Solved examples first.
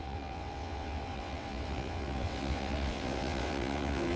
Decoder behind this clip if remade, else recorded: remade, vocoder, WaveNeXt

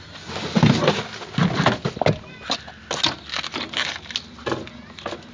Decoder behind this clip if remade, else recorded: recorded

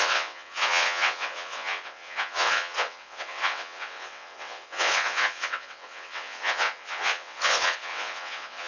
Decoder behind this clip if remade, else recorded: remade, vocoder, WaveNeXt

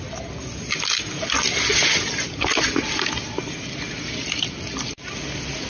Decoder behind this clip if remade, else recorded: recorded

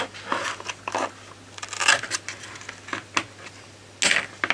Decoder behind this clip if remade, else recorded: recorded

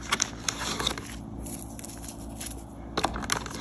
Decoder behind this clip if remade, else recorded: recorded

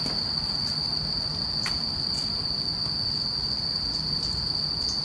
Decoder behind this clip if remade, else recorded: recorded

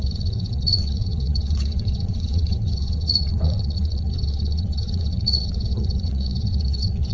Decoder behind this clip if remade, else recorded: remade, vocoder, WaveNeXt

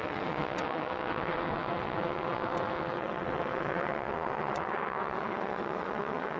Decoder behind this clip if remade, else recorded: remade, vocoder, WaveNeXt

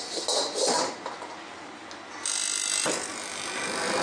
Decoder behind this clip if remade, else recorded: recorded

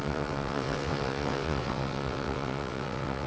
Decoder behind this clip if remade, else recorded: remade, vocoder, WaveNeXt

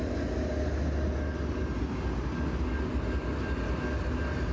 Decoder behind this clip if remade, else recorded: recorded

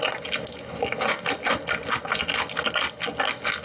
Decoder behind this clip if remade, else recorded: recorded